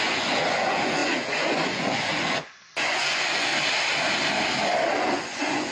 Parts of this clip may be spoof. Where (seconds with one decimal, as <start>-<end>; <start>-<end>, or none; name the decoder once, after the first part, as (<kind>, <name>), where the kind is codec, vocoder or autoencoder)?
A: 0.0-3.5 (vocoder, Vocos); 5.0-5.7